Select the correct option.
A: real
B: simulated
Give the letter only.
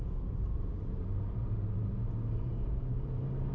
B